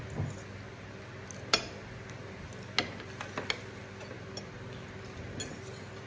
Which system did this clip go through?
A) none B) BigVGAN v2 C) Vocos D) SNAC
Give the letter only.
A